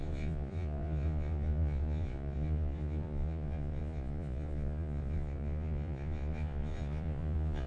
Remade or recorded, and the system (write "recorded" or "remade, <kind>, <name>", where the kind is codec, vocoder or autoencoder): remade, vocoder, Vocos